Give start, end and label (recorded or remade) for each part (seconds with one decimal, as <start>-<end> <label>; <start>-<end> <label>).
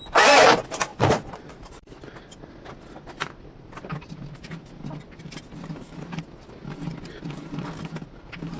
0.0-0.9 recorded; 0.9-1.5 remade; 1.5-8.6 recorded